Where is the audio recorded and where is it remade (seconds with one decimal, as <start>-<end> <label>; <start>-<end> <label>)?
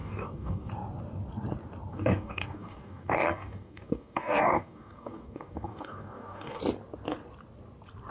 0.0-0.7 remade; 0.7-1.9 recorded; 1.9-6.6 remade; 6.6-8.1 recorded